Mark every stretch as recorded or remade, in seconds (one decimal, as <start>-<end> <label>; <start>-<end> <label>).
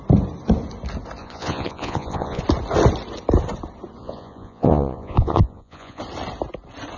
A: 0.0-1.2 recorded; 1.2-2.4 remade; 2.4-4.0 recorded; 4.0-6.0 remade; 6.0-7.0 recorded